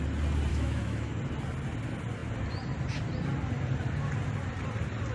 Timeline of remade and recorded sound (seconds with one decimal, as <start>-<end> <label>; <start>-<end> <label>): 0.0-0.5 recorded; 0.5-1.2 remade; 1.2-5.1 recorded

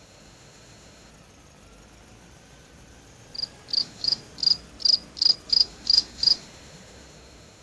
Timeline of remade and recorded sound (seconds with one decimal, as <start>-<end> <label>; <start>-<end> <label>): 0.0-1.1 remade; 1.1-3.8 recorded; 3.8-4.2 remade; 4.2-5.5 recorded; 5.5-7.6 remade

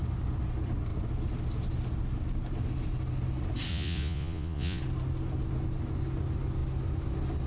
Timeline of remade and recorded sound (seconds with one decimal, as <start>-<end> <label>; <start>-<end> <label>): 0.0-3.7 recorded; 3.7-4.8 remade; 4.8-7.5 recorded

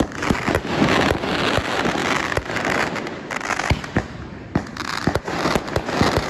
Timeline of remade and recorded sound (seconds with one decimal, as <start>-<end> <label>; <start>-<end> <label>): 0.0-6.3 recorded

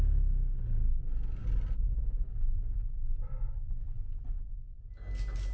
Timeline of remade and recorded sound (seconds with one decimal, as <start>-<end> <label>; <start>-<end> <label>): 0.0-5.5 recorded